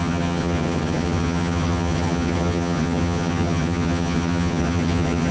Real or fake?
fake